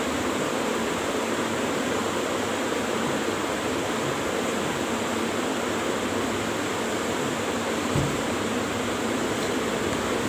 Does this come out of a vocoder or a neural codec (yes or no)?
yes